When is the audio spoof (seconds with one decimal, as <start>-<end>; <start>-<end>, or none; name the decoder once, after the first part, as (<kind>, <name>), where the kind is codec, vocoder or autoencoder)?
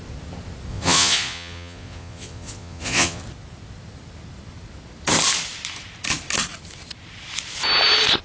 0.7-3.2 (vocoder, Vocos)